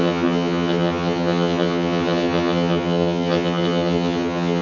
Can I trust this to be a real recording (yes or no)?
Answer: no